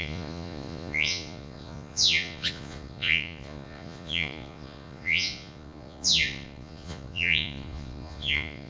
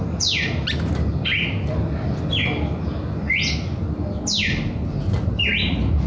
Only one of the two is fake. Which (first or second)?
first